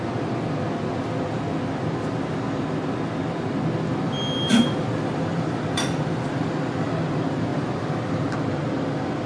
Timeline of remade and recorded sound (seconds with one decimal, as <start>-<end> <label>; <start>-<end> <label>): 0.0-4.5 recorded; 4.5-6.3 remade; 6.3-7.5 recorded; 7.5-8.2 remade; 8.2-9.3 recorded